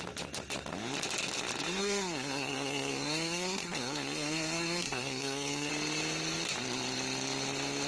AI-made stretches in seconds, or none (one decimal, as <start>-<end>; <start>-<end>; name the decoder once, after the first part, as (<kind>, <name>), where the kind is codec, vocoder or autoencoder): 1.8-5.7 (codec, SNAC)